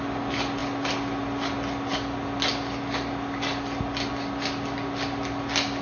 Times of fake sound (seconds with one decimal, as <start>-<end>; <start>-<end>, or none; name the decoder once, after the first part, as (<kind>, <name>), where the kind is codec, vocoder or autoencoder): none

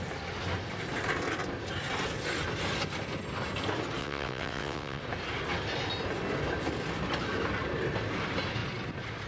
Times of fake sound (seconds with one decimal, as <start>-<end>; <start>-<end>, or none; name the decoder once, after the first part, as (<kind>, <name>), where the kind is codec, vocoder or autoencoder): 4.0-5.0 (vocoder, WaveNeXt)

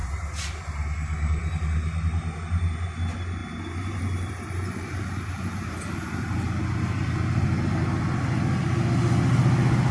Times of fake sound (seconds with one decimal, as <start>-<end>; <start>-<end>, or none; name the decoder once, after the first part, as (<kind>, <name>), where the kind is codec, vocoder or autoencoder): 0.0-0.6 (vocoder, BigVGAN v2); 3.4-6.5

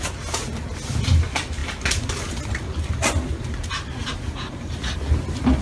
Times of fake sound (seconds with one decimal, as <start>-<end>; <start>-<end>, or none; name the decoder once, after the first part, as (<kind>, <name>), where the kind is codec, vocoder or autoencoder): none

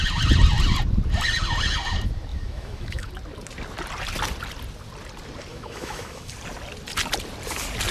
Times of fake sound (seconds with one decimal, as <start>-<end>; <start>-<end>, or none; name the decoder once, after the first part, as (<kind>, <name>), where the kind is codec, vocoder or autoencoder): 2.3-3.1 (autoencoder, DAC-VAE); 5.5-6.3